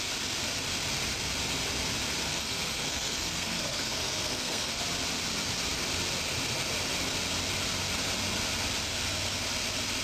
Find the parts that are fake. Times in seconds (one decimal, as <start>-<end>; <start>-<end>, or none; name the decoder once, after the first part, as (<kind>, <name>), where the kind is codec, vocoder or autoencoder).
2.3-4.8 (codec, SNAC)